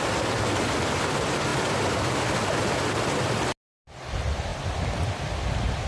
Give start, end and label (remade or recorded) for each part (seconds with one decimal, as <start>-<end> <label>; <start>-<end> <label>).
0.0-1.5 recorded; 1.5-2.5 remade; 2.5-4.5 recorded; 4.5-5.1 remade; 5.1-5.9 recorded